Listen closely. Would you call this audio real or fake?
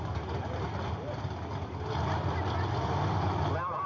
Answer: real